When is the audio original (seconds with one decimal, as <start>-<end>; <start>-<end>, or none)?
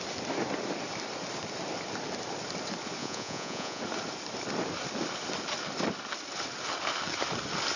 0.0-3.0; 3.8-7.8